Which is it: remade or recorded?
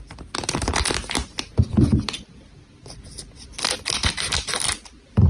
recorded